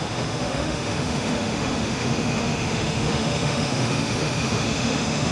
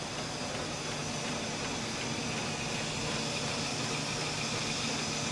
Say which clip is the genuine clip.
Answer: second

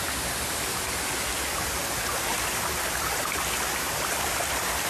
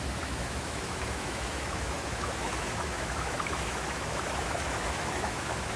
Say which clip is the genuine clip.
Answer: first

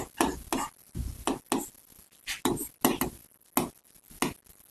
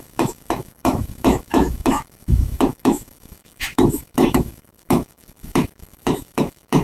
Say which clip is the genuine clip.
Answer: first